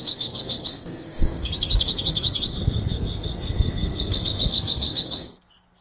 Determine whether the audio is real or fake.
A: fake